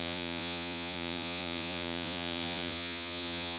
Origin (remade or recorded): remade